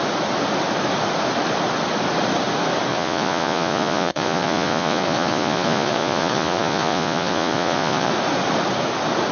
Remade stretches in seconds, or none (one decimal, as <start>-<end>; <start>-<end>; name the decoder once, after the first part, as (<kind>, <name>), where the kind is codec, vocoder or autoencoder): 2.9-8.1 (vocoder, Vocos)